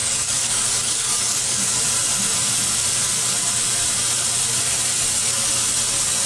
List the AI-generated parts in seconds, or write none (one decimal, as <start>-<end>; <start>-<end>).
0.0-1.8